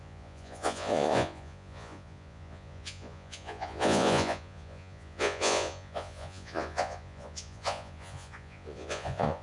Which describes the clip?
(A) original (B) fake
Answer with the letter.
B